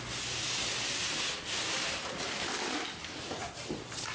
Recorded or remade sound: recorded